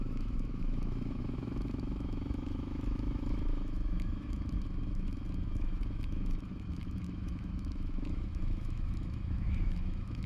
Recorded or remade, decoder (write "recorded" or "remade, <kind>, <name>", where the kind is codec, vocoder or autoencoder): remade, autoencoder, DAC-VAE